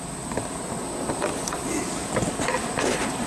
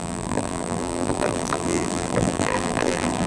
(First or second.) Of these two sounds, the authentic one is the first